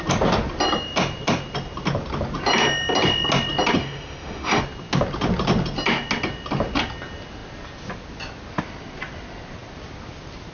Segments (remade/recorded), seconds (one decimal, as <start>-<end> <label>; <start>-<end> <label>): 0.0-3.8 recorded; 3.8-4.6 remade; 4.6-10.5 recorded